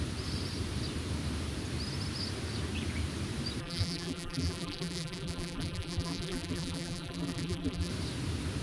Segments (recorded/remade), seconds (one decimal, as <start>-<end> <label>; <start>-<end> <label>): 0.0-3.6 recorded; 3.6-7.9 remade; 7.9-8.6 recorded